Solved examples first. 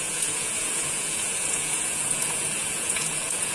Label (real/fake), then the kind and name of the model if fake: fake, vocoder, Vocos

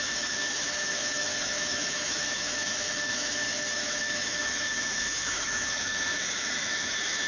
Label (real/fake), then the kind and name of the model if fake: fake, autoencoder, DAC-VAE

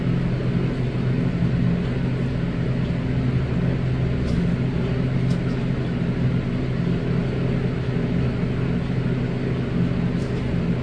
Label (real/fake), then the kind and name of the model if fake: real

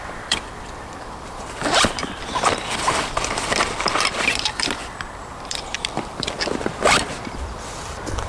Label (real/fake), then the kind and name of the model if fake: fake, vocoder, BigVGAN v2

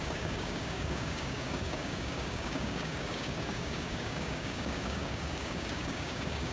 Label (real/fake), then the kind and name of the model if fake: fake, codec, DAC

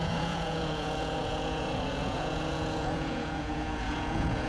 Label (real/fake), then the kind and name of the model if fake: fake, vocoder, Vocos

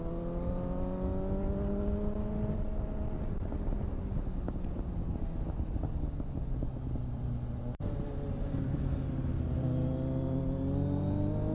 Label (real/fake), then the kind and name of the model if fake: real